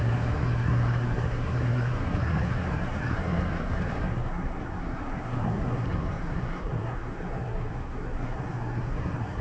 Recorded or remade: remade